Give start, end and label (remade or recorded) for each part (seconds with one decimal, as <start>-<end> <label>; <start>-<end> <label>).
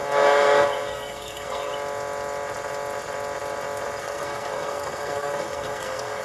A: 0.0-1.7 remade; 1.7-4.0 recorded; 4.0-6.2 remade